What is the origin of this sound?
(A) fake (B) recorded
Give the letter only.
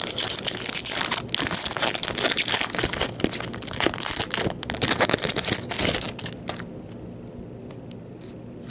B